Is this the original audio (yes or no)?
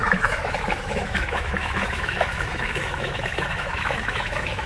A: no